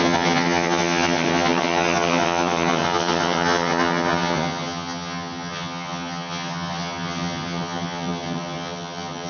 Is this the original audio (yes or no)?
no